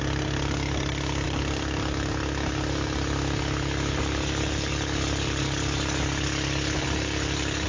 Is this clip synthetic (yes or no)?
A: no